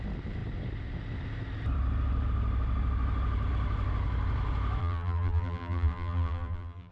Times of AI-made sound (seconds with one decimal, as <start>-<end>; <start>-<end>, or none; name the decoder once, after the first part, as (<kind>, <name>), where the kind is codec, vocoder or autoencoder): 4.8-6.9 (vocoder, BigVGAN v2)